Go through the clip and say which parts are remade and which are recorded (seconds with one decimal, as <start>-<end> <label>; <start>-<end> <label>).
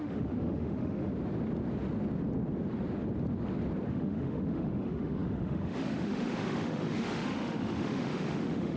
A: 0.0-1.1 remade; 1.1-3.9 recorded; 3.9-8.8 remade